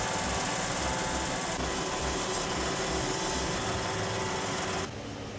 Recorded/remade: recorded